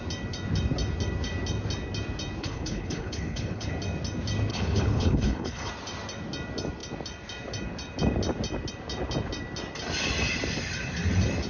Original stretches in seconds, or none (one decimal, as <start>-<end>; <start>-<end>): 0.0-2.4; 3.7-4.5; 5.7-11.5